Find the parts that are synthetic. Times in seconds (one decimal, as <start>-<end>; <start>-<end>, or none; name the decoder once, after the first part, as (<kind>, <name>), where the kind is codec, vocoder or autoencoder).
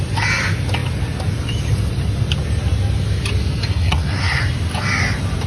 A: 3.7-4.4 (codec, SNAC)